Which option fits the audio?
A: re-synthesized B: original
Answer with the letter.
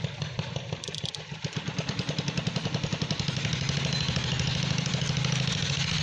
B